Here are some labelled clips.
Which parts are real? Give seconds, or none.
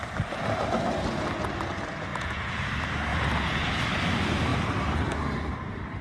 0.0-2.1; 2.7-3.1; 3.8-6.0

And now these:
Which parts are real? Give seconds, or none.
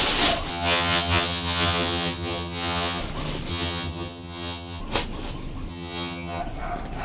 0.0-0.5; 3.0-3.5; 4.8-5.7; 6.4-7.0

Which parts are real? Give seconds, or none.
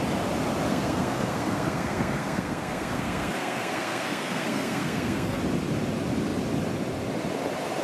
0.0-0.7; 5.4-7.8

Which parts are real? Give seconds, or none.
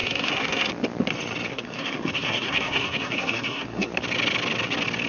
0.7-1.5; 3.9-5.1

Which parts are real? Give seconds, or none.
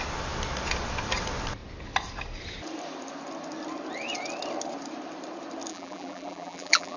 0.0-5.7